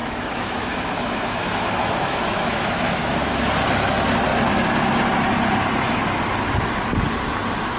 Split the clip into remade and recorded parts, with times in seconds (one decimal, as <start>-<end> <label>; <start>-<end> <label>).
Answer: 0.0-3.4 remade; 3.4-7.8 recorded